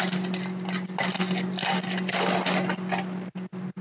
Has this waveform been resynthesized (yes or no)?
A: no